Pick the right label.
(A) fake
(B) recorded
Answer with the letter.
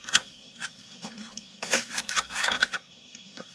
A